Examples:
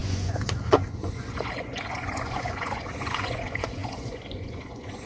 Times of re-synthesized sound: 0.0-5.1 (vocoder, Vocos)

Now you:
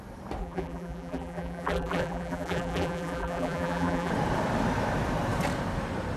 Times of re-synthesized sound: 0.4-4.1 (vocoder, BigVGAN v2)

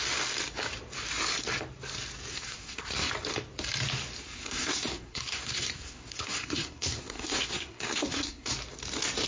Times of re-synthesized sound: 2.3-3.1 (codec, SNAC); 4.2-8.5

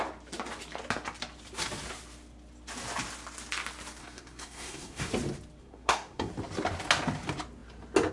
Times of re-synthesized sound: 4.0-5.1 (codec, SNAC); 5.6-6.3

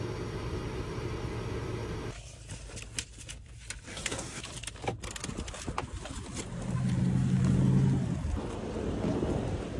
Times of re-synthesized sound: 3.9-4.4 (codec, SNAC)

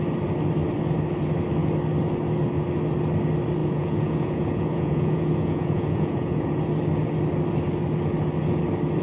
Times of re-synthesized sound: 3.6-6.6 (vocoder, Vocos)

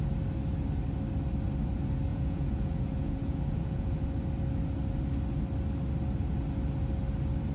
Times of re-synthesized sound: 2.1-4.1 (vocoder, Vocos)

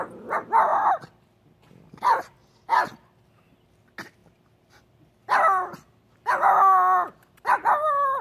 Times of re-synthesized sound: none